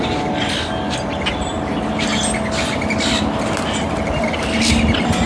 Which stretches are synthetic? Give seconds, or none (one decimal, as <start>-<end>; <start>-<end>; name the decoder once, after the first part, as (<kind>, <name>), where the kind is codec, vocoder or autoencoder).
none